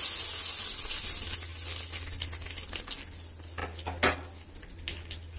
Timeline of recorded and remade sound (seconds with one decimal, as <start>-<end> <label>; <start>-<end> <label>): 0.0-5.4 recorded